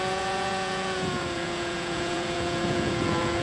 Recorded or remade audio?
remade